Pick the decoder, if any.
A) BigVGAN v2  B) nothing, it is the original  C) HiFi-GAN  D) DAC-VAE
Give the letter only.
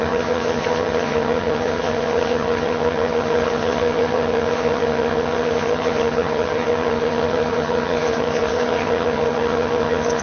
C